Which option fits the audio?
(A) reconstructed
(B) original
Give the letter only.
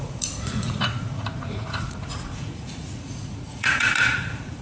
A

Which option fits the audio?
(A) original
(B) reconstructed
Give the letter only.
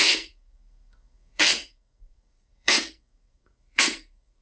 B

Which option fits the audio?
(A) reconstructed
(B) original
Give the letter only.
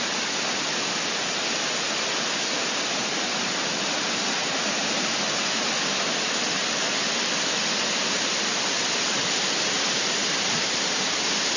B